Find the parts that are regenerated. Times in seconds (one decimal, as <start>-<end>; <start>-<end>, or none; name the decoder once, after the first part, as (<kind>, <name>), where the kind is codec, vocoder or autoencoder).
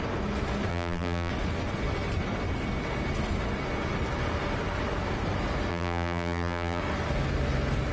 0.7-1.3 (vocoder, BigVGAN v2); 5.7-6.8